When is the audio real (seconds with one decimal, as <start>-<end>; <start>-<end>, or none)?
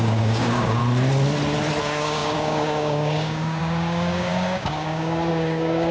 0.8-1.8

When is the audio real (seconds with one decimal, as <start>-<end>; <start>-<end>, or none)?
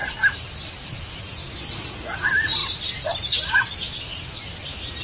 1.6-5.0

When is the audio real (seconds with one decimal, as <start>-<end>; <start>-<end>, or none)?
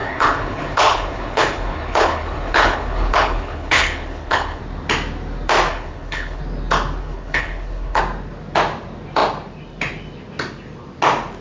4.6-5.7; 6.4-7.0; 8.0-11.4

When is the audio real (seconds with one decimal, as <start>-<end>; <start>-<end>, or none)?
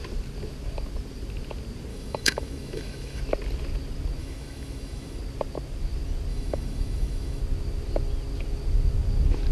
0.0-1.9; 3.2-4.2; 5.2-6.3; 7.4-9.5